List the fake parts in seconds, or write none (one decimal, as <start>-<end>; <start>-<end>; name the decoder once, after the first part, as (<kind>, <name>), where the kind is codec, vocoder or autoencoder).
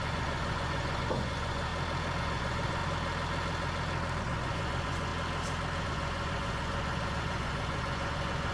0.0-1.7 (vocoder, Vocos); 2.2-2.8; 4.2-5.1; 5.8-8.5